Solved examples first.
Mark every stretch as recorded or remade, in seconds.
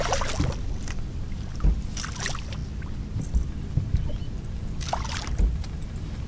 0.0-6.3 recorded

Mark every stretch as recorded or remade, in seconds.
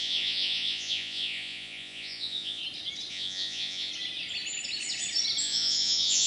0.0-2.6 remade; 2.6-3.1 recorded; 3.1-3.9 remade; 3.9-5.4 recorded; 5.4-6.3 remade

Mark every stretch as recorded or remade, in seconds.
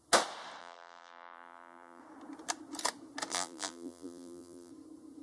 0.0-0.6 recorded; 0.6-2.0 remade; 2.0-3.3 recorded; 3.3-4.7 remade; 4.7-5.2 recorded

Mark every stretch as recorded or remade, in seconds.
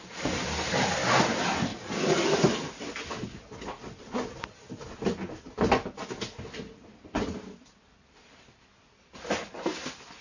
0.0-10.2 recorded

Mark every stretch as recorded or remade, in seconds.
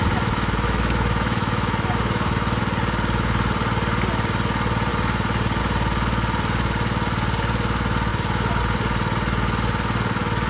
0.0-2.6 remade; 2.6-10.5 recorded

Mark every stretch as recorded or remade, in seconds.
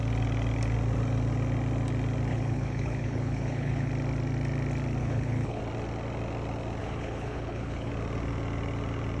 0.0-2.3 recorded; 2.3-3.9 remade; 3.9-5.0 recorded; 5.0-5.6 remade; 5.6-6.8 recorded; 6.8-7.9 remade; 7.9-9.2 recorded